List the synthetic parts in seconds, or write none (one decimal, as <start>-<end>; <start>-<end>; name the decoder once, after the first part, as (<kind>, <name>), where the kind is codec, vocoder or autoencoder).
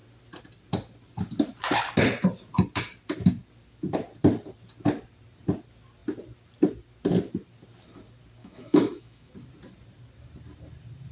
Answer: 8.4-9.3 (autoencoder, DAC-VAE)